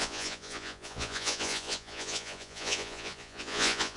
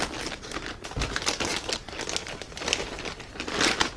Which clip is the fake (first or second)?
first